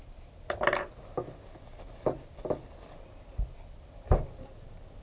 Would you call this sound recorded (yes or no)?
yes